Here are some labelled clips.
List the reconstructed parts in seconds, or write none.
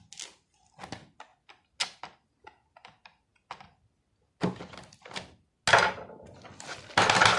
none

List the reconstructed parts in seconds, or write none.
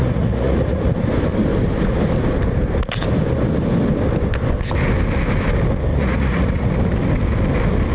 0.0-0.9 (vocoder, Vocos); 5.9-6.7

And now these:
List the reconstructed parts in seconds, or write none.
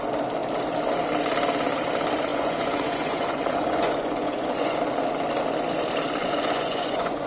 2.3-4.8 (vocoder, Vocos); 6.2-7.3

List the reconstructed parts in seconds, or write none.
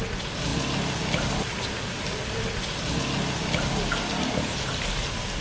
none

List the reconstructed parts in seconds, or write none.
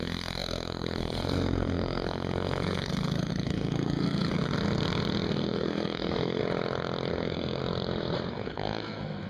0.0-4.5 (codec, SNAC); 5.3-6.4; 7.1-7.6; 8.3-9.3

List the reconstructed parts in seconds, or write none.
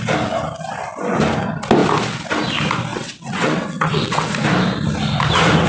2.9-4.3 (vocoder, WaveNeXt)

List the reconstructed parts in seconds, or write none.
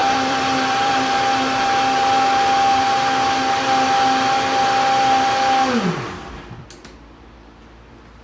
0.0-0.9 (vocoder, BigVGAN v2)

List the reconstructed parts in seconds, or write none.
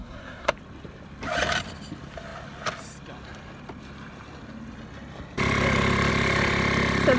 0.0-0.5 (codec, SNAC)